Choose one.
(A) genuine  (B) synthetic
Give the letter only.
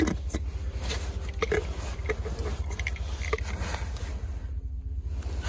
A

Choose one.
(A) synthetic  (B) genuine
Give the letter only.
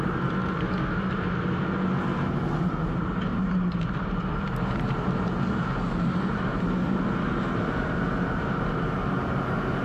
A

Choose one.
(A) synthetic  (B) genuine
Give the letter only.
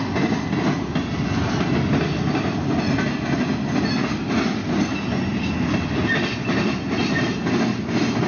B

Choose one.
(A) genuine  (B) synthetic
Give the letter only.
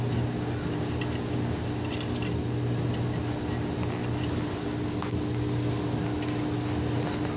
A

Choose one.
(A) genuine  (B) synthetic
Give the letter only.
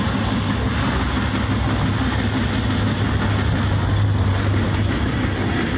A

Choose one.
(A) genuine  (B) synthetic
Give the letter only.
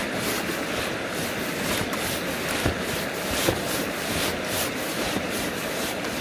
A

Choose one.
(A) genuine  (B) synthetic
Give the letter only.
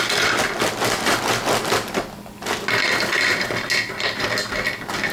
A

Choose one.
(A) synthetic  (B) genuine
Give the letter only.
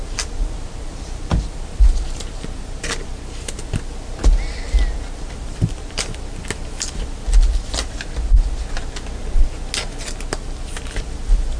B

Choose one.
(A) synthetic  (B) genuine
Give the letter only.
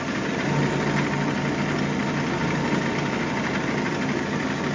B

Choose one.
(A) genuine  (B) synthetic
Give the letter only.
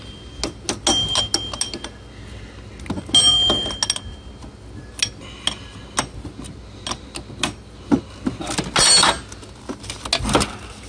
A